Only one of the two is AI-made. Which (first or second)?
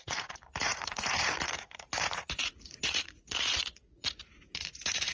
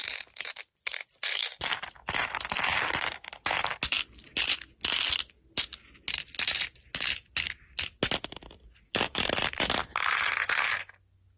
first